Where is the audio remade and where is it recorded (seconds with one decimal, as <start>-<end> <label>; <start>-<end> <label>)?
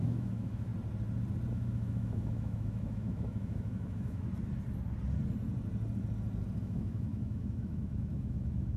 0.0-0.7 remade; 0.7-1.5 recorded; 1.5-4.3 remade; 4.3-6.6 recorded; 6.6-8.8 remade